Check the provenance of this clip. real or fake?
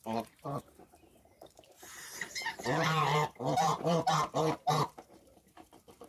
fake